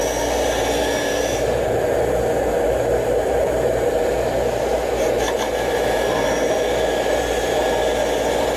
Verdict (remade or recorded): remade